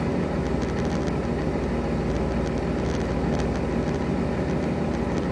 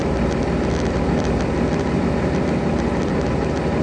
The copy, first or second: second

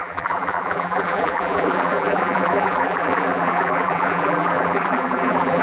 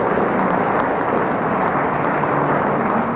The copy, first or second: first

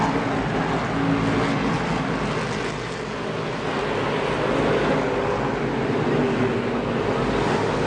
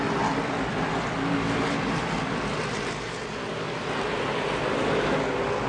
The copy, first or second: second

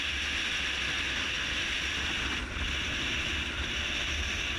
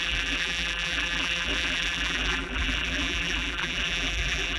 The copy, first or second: second